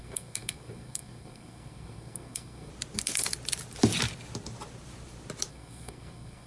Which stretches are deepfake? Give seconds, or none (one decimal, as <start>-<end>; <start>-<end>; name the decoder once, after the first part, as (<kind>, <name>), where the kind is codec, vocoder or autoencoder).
0.0-2.7 (codec, SNAC); 5.5-6.5

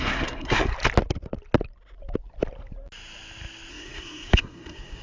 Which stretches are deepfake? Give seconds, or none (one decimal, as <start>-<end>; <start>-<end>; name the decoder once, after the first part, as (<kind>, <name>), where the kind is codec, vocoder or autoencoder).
0.0-0.7 (codec, SNAC); 3.7-5.0

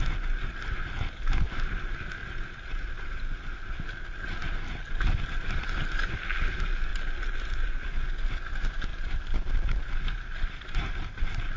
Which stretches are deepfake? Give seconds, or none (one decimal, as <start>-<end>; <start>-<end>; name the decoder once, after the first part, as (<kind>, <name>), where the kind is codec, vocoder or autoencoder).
6.9-7.9 (vocoder, BigVGAN v2); 8.9-11.1

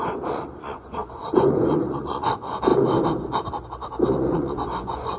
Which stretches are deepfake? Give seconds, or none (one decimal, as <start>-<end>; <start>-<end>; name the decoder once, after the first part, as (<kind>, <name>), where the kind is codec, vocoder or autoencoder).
0.0-2.7 (vocoder, Vocos); 4.1-5.2

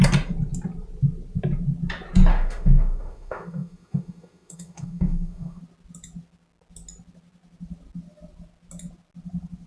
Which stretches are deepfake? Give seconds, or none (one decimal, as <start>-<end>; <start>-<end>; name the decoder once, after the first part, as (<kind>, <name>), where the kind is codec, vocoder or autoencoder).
2.3-5.6 (autoencoder, DAC-VAE)

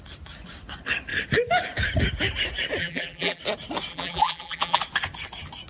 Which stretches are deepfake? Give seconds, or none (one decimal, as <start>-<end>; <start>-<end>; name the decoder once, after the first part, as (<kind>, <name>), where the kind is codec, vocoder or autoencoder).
2.8-3.4 (vocoder, BigVGAN v2); 3.9-4.8

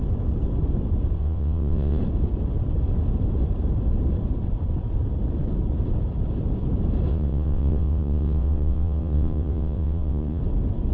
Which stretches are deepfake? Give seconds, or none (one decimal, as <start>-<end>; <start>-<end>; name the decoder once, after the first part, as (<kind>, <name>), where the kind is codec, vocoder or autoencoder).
1.2-2.0 (vocoder, WaveNeXt); 7.1-10.4

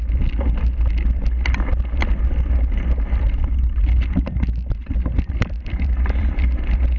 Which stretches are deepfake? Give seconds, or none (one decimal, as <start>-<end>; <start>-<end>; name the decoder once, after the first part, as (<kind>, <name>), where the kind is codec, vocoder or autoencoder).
4.8-6.3 (vocoder, BigVGAN v2)